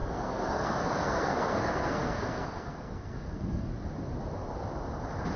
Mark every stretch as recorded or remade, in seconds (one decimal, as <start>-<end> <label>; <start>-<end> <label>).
0.0-3.7 remade; 3.7-5.4 recorded